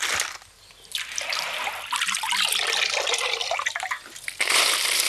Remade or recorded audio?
recorded